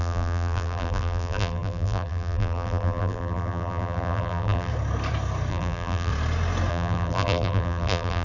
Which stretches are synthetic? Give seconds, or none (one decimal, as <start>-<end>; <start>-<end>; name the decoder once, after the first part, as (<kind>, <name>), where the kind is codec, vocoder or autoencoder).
0.0-4.7 (vocoder, BigVGAN v2); 5.5-6.1; 6.7-8.2